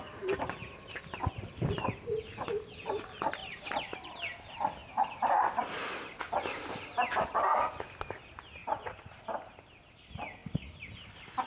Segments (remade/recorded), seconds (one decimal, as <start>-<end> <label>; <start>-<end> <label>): 0.0-3.4 recorded; 3.4-4.1 remade; 4.1-8.6 recorded; 8.6-9.2 remade; 9.2-11.5 recorded

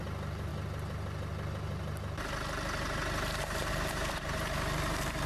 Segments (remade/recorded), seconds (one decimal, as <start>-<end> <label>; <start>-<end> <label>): 0.0-0.5 remade; 0.5-3.7 recorded; 3.7-5.3 remade

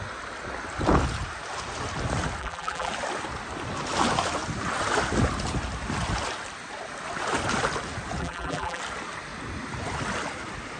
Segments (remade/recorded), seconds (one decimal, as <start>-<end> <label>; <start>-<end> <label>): 0.0-2.4 recorded; 2.4-2.9 remade; 2.9-8.2 recorded; 8.2-8.8 remade; 8.8-10.8 recorded